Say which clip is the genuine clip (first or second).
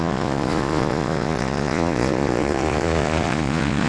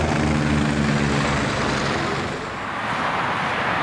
second